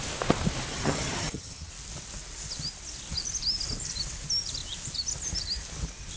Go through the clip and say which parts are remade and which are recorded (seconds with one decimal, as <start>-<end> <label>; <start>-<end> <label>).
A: 0.0-0.7 recorded; 0.7-1.7 remade; 1.7-6.2 recorded